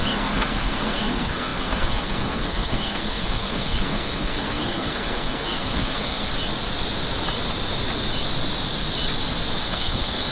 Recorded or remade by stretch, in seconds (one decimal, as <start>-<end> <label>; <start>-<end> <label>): 0.0-6.3 remade; 6.3-9.6 recorded; 9.6-10.3 remade